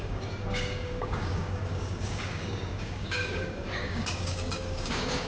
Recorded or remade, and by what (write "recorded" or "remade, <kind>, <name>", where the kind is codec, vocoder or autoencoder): remade, codec, DAC